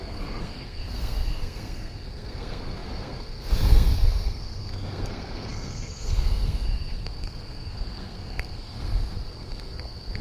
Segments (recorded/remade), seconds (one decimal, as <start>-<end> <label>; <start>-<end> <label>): 0.0-10.2 remade